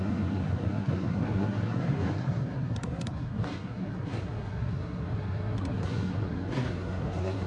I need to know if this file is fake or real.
fake